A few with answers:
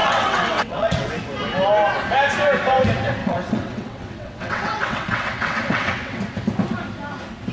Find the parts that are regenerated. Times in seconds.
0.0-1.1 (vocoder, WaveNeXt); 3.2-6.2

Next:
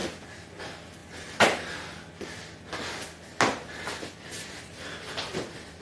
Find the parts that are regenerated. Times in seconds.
none